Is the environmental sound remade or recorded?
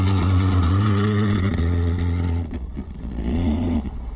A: remade